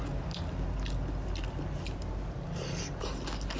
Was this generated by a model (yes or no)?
no